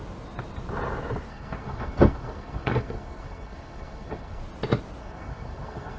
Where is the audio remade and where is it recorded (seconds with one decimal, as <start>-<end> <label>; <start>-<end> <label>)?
0.0-1.3 recorded; 1.3-4.4 remade; 4.4-5.0 recorded; 5.0-6.0 remade